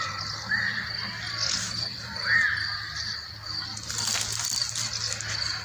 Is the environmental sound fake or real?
real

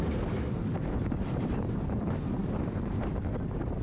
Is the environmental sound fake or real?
fake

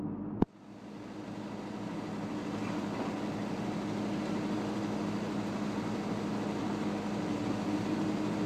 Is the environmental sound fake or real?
real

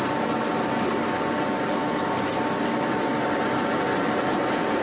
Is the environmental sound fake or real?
real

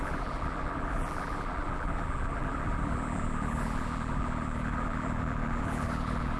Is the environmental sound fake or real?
fake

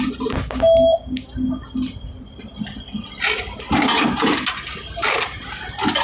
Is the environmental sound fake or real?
real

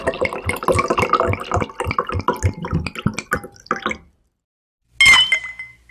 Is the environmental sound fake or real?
real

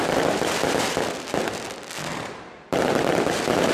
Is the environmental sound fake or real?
fake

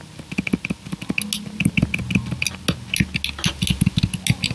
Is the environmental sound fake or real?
real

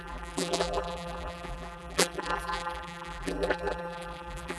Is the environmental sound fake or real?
fake